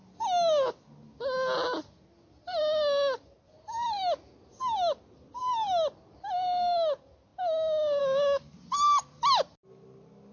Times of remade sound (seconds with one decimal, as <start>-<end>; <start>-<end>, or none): none